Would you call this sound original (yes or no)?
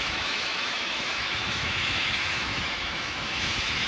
no